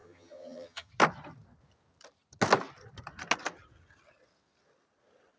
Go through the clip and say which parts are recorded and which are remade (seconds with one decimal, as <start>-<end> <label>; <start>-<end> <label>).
0.0-0.9 remade; 0.9-5.4 recorded